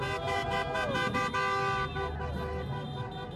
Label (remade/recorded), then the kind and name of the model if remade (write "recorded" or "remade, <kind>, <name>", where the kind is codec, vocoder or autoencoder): recorded